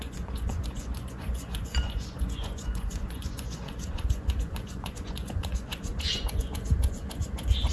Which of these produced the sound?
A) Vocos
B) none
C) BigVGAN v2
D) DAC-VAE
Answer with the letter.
A